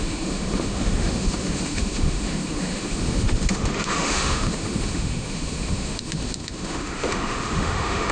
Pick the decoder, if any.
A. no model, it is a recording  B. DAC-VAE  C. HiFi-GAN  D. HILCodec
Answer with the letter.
B